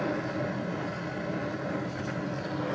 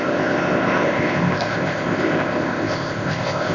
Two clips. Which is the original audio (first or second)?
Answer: first